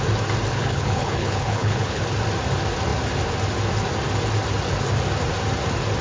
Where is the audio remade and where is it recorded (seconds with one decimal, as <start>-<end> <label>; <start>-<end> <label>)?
0.0-0.5 recorded; 0.5-2.0 remade; 2.0-6.0 recorded